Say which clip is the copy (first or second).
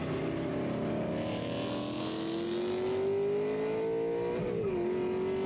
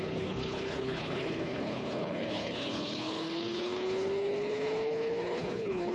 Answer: second